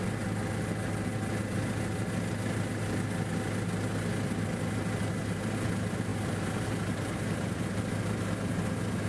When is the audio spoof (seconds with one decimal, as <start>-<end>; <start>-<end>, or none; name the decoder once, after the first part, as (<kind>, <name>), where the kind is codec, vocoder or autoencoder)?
6.1-8.3 (vocoder, BigVGAN v2)